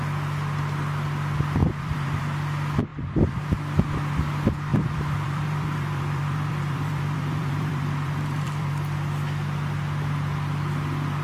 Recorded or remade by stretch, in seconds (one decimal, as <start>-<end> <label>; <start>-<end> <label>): 0.0-1.6 recorded; 1.6-2.2 remade; 2.2-2.9 recorded; 2.9-3.6 remade; 3.6-4.7 recorded; 4.7-8.7 remade; 8.7-11.2 recorded